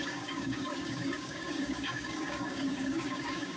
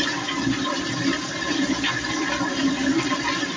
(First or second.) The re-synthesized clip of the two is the first